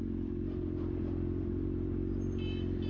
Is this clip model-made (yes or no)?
no